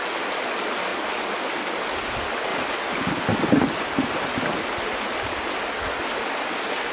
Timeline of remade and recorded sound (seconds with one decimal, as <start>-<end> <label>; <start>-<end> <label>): 0.0-6.9 recorded